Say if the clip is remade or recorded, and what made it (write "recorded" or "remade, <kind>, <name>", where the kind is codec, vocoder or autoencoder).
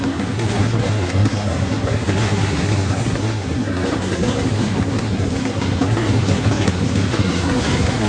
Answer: remade, codec, SNAC